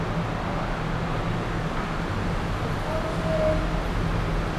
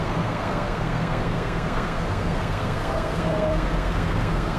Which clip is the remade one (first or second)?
second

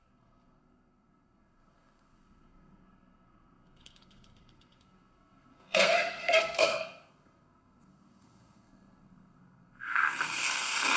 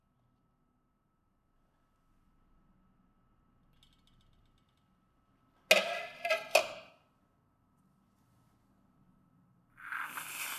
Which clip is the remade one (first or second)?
first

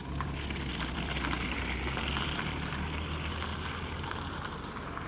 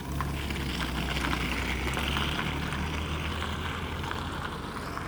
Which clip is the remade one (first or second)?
first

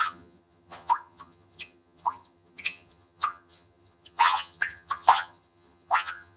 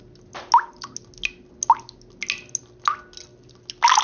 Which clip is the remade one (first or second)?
first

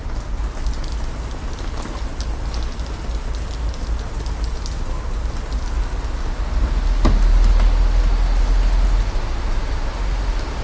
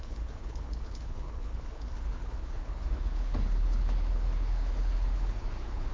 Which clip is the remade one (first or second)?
second